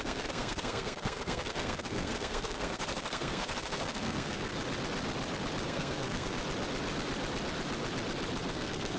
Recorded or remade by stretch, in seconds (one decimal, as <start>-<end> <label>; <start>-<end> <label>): 0.0-4.5 remade; 4.5-5.7 recorded; 5.7-6.4 remade; 6.4-8.5 recorded; 8.5-9.0 remade